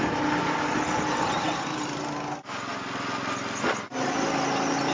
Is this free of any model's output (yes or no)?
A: yes